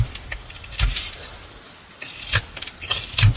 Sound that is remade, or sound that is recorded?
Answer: recorded